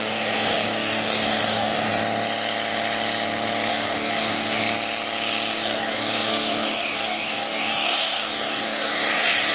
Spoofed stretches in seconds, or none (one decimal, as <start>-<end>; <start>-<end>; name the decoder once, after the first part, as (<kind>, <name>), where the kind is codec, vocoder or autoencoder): 0.0-1.9 (codec, DAC); 3.7-4.6; 5.5-9.5